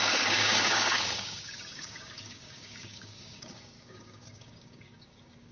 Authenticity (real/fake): fake